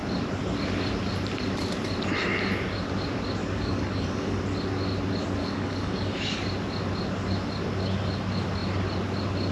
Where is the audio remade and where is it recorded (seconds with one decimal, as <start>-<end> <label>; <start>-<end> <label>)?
0.0-3.4 recorded; 3.4-4.4 remade; 4.4-5.4 recorded; 5.4-6.4 remade; 6.4-9.5 recorded

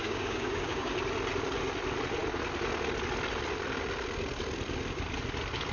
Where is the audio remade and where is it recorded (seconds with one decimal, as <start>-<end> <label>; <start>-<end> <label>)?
0.0-0.9 remade; 0.9-5.7 recorded

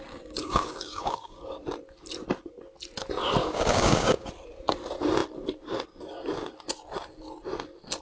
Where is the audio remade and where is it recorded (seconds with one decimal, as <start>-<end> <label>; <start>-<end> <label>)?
0.0-0.4 recorded; 0.4-1.4 remade; 1.4-3.4 recorded; 3.4-4.3 remade; 4.3-8.0 recorded

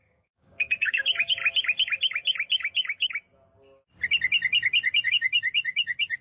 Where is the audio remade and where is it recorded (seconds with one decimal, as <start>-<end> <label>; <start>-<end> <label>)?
0.0-1.4 remade; 1.4-5.1 recorded; 5.1-6.2 remade

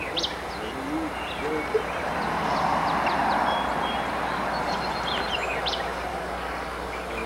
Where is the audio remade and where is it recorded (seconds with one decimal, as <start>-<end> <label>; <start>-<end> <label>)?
0.0-6.1 recorded; 6.1-7.3 remade

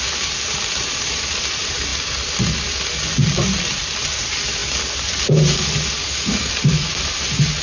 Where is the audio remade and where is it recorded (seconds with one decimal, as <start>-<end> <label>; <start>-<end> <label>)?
0.0-6.0 recorded; 6.0-6.5 remade; 6.5-7.6 recorded

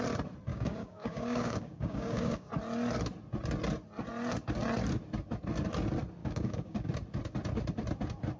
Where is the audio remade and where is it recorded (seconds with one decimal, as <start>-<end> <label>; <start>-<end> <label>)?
0.0-0.5 recorded; 0.5-2.5 remade; 2.5-6.2 recorded; 6.2-6.9 remade; 6.9-8.4 recorded

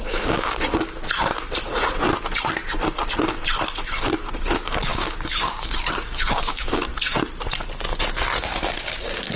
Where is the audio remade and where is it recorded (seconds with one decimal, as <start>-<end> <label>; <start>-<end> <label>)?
0.0-0.9 remade; 0.9-4.5 recorded; 4.5-6.9 remade; 6.9-8.4 recorded; 8.4-9.4 remade